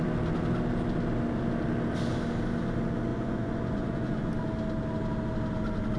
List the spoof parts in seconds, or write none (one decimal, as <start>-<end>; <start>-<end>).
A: 3.1-4.3